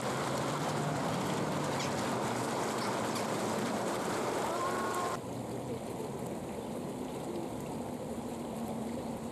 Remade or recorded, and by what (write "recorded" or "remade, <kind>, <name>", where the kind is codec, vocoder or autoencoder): remade, vocoder, BigVGAN v2